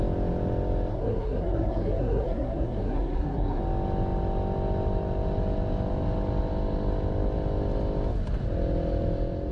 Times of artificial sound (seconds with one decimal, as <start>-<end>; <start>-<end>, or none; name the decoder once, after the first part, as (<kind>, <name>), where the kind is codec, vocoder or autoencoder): 0.9-3.6 (codec, SNAC)